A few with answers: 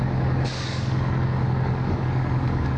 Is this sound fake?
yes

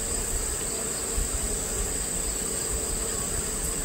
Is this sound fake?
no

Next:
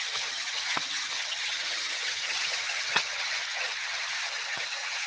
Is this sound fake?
yes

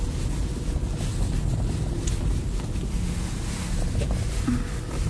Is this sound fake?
no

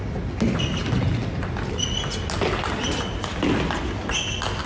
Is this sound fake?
no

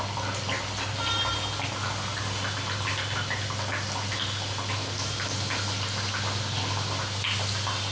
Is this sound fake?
no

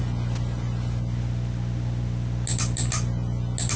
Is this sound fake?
no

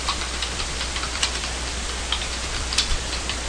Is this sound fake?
yes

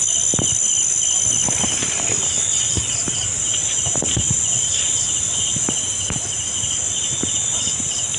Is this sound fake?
no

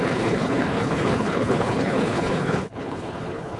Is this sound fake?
yes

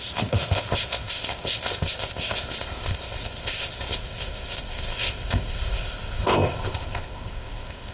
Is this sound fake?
yes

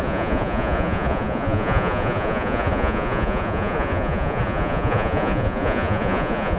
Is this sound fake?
yes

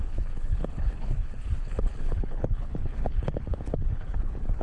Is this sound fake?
yes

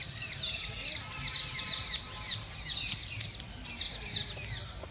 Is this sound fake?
no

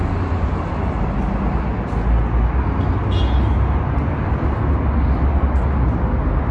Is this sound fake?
no